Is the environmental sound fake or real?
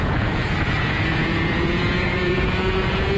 fake